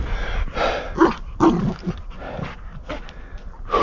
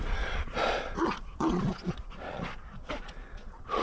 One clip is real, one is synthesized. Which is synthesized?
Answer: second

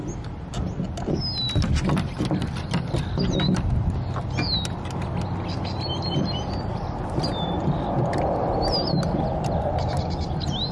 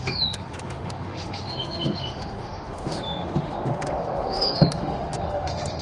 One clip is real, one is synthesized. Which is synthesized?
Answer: second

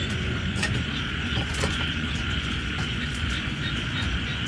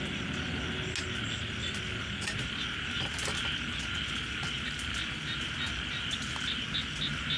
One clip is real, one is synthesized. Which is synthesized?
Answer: first